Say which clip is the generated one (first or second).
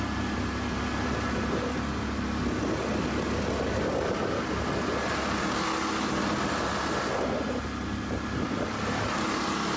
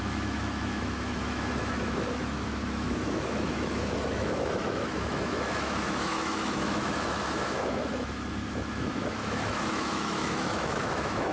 second